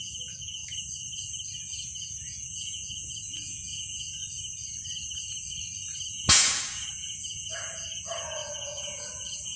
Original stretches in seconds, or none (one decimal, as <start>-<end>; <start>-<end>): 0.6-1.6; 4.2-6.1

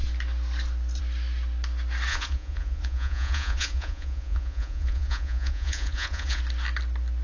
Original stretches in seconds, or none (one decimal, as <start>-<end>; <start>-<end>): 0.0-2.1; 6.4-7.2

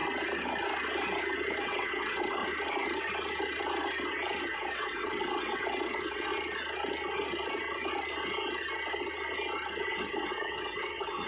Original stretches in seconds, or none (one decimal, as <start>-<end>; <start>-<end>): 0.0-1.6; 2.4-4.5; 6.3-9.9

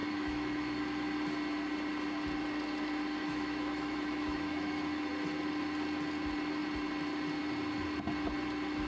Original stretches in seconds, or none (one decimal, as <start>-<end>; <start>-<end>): 0.8-3.2; 5.1-8.9

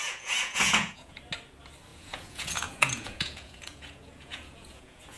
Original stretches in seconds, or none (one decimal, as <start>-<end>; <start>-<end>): 1.2-1.9